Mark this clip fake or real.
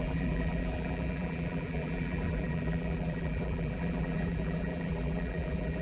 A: fake